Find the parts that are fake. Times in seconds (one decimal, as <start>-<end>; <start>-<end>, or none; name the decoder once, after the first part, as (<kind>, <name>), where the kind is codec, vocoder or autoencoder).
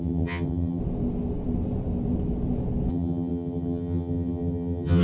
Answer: 0.0-0.8 (vocoder, HiFi-GAN); 2.9-5.0